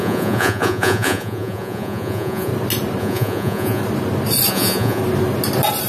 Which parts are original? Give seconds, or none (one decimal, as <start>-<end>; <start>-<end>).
2.5-3.0; 3.8-4.5; 5.0-5.9